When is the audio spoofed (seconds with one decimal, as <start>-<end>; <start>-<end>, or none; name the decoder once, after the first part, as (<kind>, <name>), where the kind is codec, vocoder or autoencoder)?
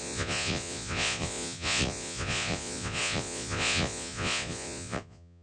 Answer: 0.0-5.4 (vocoder, Vocos)